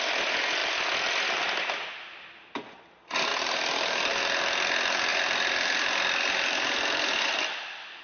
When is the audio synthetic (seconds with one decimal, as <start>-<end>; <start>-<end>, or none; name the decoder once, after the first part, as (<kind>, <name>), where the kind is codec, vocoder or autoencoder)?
3.3-4.1 (vocoder, BigVGAN v2); 5.1-8.0